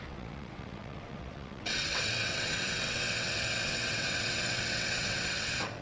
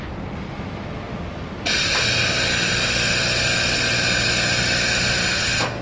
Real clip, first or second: second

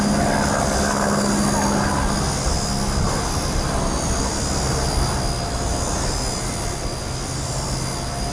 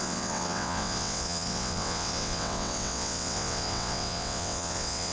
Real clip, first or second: first